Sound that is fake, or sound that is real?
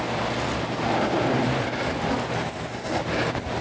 real